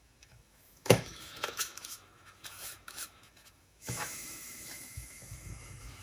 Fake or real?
fake